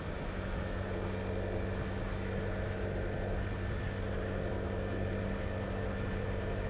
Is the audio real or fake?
real